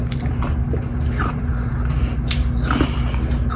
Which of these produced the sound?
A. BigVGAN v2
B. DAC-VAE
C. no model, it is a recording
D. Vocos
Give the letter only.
C